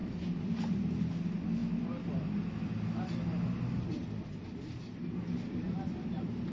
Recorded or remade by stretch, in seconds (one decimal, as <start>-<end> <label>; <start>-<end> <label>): 0.0-6.5 recorded